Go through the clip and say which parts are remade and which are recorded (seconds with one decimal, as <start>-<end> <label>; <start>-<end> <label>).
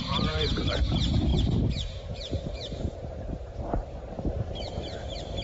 0.0-5.4 remade